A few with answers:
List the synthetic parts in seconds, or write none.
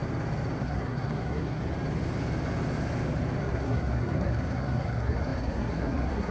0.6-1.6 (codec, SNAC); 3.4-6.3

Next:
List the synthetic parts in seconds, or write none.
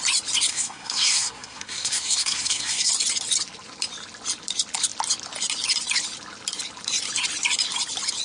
0.5-2.9 (codec, SNAC)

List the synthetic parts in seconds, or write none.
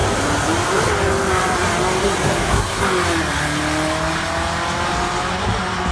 2.0-2.8 (codec, SNAC)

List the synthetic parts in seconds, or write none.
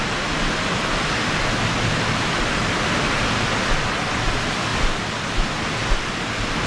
none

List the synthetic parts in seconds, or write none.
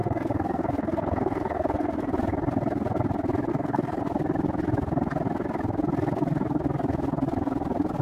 0.0-2.1 (codec, SNAC); 3.5-4.0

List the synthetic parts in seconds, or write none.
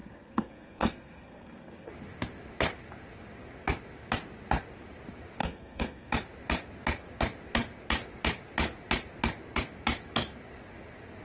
0.0-1.9 (codec, SNAC); 5.4-6.1